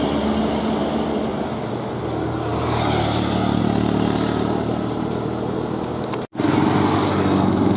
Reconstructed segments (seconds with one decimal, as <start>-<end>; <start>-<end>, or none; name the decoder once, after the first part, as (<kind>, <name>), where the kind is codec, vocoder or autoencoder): 1.3-2.0 (vocoder, BigVGAN v2)